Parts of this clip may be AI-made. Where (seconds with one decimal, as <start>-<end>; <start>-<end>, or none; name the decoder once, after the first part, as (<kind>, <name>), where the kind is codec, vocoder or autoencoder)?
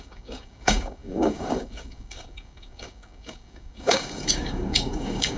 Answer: 0.0-5.4 (codec, DAC)